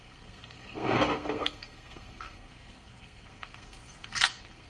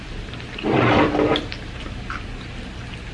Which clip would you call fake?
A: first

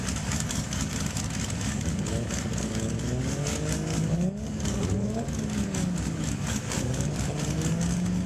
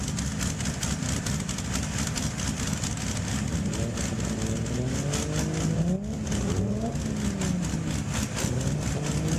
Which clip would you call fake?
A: first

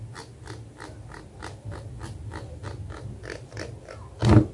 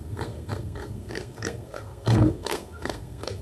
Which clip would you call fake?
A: second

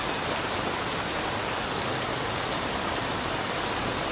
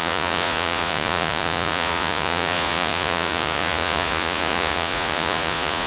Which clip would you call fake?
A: second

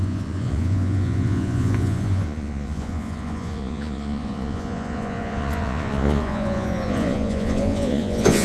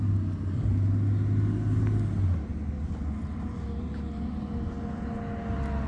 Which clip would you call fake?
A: first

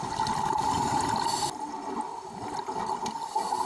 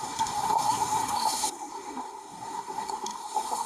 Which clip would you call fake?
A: second